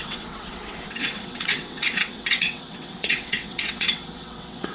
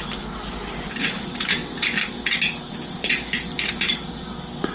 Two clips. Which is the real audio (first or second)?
second